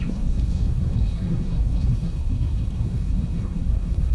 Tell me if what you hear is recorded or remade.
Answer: remade